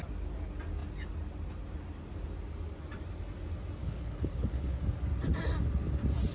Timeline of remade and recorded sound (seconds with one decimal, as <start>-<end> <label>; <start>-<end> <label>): 0.0-3.8 recorded; 3.8-4.8 remade; 4.8-6.3 recorded